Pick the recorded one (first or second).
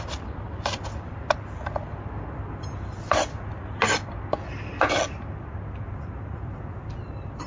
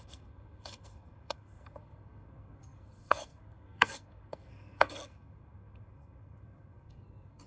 first